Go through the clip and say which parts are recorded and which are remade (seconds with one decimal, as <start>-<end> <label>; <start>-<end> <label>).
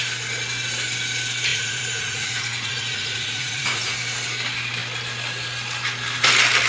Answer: 0.0-1.5 recorded; 1.5-3.9 remade; 3.9-6.7 recorded